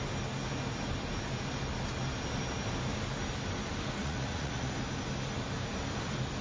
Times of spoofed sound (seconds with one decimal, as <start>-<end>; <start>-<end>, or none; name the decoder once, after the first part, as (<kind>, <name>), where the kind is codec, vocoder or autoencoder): 4.0-4.7 (vocoder, Vocos)